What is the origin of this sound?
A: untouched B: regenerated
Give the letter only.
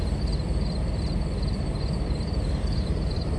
B